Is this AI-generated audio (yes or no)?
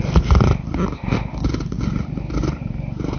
no